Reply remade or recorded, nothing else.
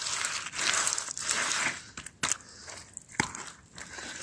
recorded